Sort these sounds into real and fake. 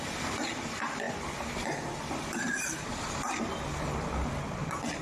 real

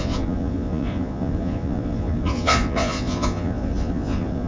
fake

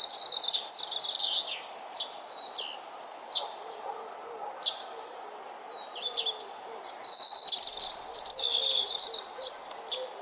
real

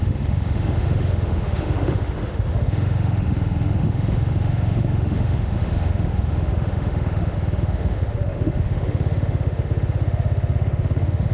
fake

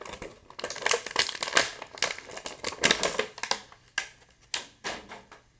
real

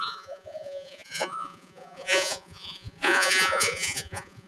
fake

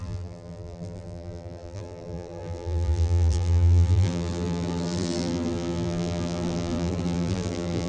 fake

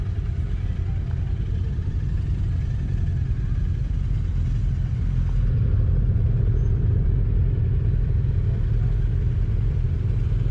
real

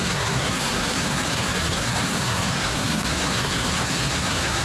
fake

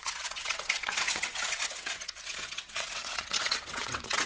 fake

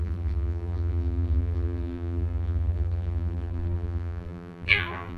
fake